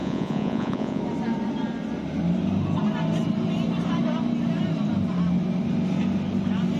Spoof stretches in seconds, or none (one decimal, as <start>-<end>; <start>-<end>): 0.0-1.0